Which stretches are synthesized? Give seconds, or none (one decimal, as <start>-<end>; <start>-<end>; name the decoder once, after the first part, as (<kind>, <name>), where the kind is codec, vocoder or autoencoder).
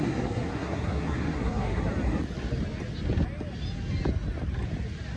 0.0-1.8 (codec, SNAC)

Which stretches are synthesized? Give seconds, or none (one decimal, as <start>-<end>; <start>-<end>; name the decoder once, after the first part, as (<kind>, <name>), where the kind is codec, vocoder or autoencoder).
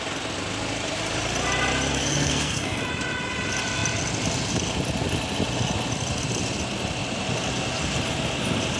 1.9-2.8 (codec, SNAC)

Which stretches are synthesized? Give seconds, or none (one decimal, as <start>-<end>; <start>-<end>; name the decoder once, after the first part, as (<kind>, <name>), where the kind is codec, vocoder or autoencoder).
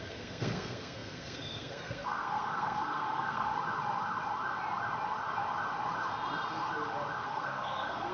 0.0-3.5 (codec, SNAC); 7.2-8.1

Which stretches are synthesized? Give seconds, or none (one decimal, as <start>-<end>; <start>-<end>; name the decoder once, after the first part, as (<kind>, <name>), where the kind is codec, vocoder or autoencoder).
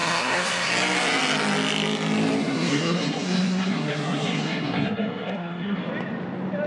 0.0-0.7 (codec, SNAC); 2.4-5.8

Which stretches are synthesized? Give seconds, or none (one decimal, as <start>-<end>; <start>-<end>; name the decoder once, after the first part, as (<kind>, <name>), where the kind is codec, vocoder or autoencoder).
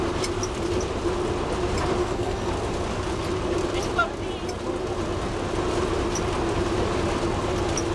2.0-2.5 (codec, SNAC)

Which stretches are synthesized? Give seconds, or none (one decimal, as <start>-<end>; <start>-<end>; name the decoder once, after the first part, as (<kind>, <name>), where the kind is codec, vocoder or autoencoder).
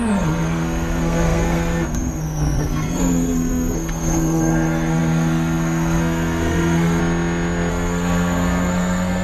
0.0-7.0 (codec, SNAC); 7.7-9.2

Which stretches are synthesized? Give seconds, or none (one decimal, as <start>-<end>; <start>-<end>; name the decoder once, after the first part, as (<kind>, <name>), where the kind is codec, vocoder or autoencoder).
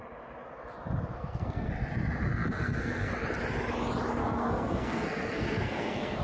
1.1-1.7 (codec, SNAC); 2.3-3.1; 4.2-6.2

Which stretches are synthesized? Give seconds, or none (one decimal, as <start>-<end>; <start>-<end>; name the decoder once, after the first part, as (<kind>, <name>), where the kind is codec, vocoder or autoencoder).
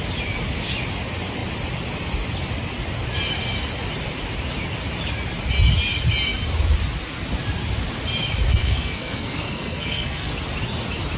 8.6-10.3 (codec, SNAC)